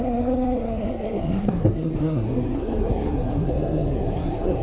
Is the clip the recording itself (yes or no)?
no